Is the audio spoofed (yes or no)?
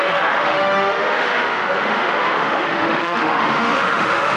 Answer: yes